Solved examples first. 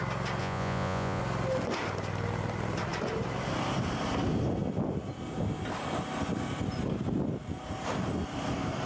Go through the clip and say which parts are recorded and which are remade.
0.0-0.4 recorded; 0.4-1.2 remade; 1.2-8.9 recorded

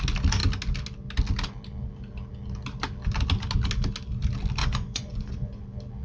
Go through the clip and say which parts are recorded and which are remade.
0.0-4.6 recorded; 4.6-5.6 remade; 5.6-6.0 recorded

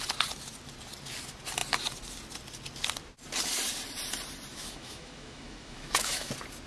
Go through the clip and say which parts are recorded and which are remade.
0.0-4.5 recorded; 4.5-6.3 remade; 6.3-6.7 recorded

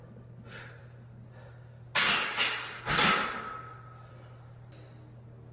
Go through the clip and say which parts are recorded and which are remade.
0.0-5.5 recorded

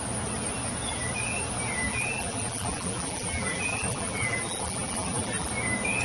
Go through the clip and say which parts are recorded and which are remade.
0.0-1.9 recorded; 1.9-5.5 remade; 5.5-6.0 recorded